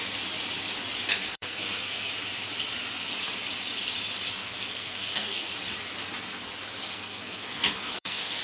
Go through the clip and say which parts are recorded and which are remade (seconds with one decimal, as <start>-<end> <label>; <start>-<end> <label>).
0.0-1.1 recorded; 1.1-2.1 remade; 2.1-4.4 recorded; 4.4-5.5 remade; 5.5-6.8 recorded; 6.8-8.4 remade